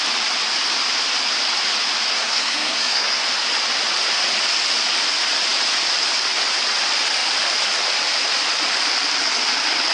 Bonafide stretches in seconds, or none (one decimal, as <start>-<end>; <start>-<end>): 0.0-2.1; 3.2-9.9